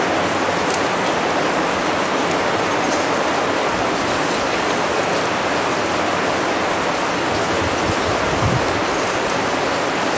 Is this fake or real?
real